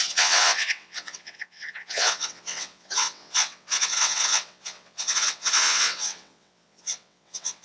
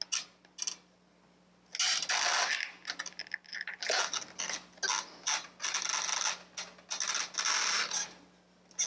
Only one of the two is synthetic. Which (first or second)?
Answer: first